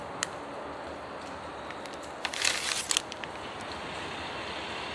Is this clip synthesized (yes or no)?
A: no